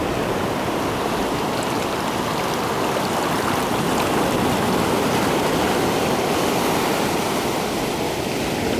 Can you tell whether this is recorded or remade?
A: recorded